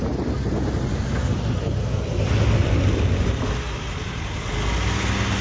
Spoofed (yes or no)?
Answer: no